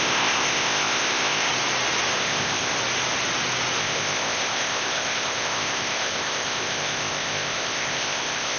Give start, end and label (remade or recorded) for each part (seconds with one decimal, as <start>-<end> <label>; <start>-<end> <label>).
0.0-1.5 remade; 1.5-2.2 recorded; 2.2-2.7 remade; 2.7-3.8 recorded; 3.8-8.6 remade